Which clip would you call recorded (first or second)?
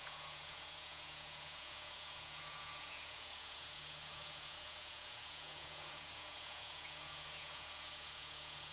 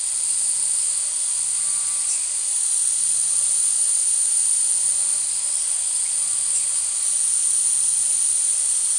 second